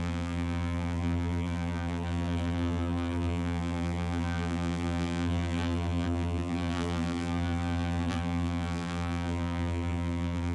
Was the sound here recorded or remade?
remade